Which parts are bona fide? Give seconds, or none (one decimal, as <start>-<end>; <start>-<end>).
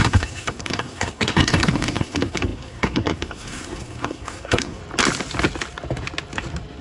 4.8-6.8